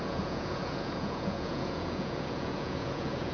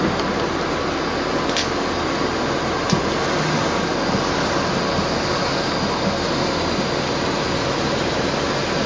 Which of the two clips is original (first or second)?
second